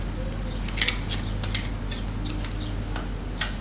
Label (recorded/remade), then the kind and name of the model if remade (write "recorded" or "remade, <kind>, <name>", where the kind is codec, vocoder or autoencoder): recorded